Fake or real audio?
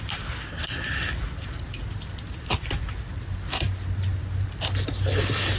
real